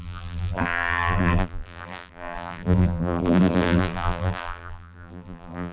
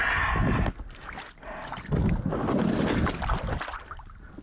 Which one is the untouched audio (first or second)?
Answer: second